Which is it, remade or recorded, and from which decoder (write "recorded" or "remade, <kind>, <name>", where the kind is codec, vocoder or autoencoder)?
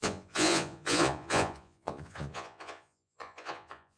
remade, vocoder, Vocos